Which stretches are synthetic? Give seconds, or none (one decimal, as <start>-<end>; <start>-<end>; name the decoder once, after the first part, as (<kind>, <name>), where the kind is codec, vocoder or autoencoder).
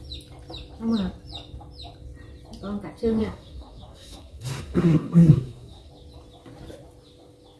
3.2-5.9 (codec, SNAC)